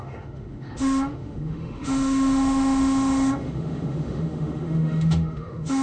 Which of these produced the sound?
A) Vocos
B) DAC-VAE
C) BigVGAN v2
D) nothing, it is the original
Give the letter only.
B